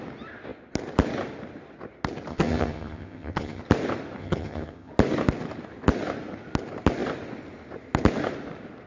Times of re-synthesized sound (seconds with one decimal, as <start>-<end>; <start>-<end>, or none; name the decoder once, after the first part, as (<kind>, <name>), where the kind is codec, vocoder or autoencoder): 2.3-3.6 (vocoder, HiFi-GAN); 4.2-4.9

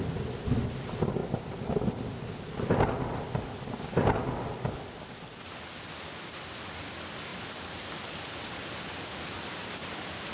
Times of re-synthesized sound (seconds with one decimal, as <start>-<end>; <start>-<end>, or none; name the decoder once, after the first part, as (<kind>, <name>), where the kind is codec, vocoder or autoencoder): none

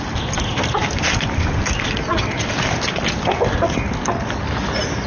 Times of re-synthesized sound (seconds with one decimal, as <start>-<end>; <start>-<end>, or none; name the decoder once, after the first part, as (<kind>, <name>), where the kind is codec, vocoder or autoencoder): none

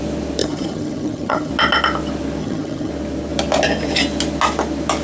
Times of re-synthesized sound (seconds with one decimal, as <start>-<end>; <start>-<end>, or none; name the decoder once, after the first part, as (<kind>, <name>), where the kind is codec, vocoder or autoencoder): 0.4-1.5 (vocoder, HiFi-GAN); 2.4-2.9

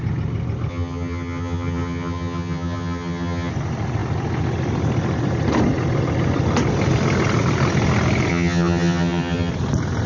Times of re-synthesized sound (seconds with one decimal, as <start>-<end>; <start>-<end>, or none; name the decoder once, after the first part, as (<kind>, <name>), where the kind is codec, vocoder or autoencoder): 0.7-3.5 (vocoder, HiFi-GAN); 8.3-9.5

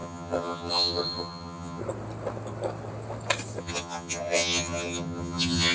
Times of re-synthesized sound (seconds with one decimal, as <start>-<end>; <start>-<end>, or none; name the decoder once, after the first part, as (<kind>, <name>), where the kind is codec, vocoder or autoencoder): 0.0-1.8 (vocoder, HiFi-GAN); 3.6-5.7